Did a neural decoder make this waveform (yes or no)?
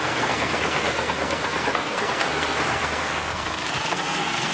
yes